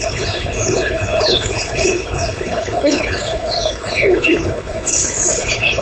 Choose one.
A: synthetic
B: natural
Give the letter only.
A